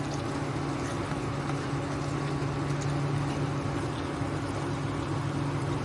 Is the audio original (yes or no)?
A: yes